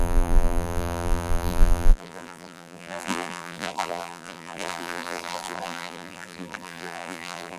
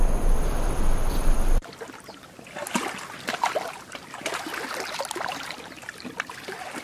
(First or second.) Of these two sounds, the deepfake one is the first